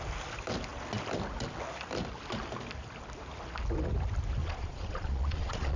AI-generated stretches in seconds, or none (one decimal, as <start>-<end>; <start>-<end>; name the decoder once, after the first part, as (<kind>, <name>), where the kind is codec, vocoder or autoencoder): 4.4-5.8 (vocoder, Vocos)